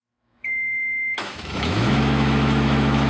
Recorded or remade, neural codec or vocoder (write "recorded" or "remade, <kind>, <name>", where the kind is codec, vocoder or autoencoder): remade, autoencoder, DAC-VAE